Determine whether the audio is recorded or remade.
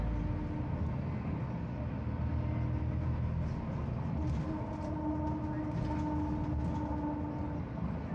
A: recorded